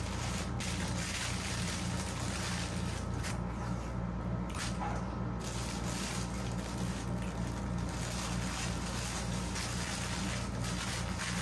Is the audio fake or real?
real